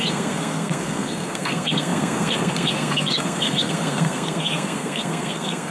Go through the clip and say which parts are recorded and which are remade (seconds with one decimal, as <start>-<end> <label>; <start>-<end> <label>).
0.0-5.7 remade